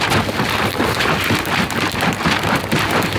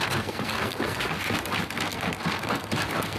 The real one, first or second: first